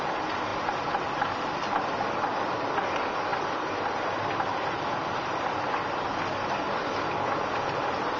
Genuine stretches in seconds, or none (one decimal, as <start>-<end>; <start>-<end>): 0.0-8.2